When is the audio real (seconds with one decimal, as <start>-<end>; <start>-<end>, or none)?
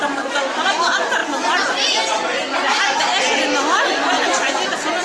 0.0-5.0